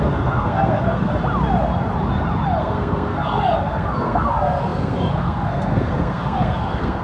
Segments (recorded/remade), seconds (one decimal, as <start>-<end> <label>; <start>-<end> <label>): 0.0-1.1 remade; 1.1-2.6 recorded; 2.6-7.0 remade